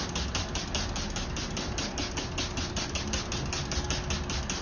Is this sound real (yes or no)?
yes